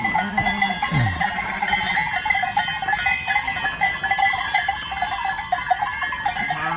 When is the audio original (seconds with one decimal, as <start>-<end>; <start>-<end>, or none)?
0.0-6.8